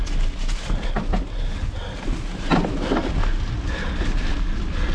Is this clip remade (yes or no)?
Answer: no